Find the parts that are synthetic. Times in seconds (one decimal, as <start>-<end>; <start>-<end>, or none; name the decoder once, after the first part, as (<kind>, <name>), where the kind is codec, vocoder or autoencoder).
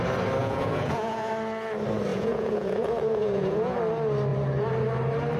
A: 0.4-1.3 (vocoder, Vocos); 2.1-3.8